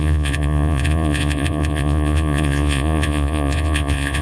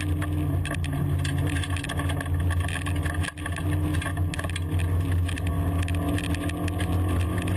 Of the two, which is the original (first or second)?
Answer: second